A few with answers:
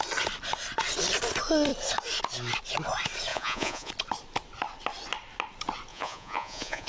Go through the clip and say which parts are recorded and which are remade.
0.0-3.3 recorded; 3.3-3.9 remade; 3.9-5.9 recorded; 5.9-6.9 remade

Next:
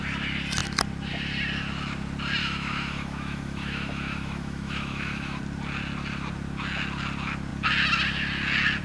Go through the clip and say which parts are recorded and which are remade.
0.0-2.4 recorded; 2.4-5.4 remade; 5.4-8.8 recorded